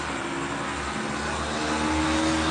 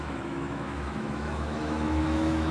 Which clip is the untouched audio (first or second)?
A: first